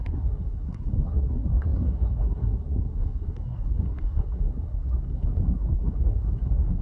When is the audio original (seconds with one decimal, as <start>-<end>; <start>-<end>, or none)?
none